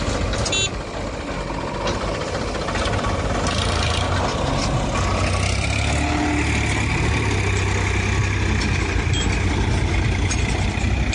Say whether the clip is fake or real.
real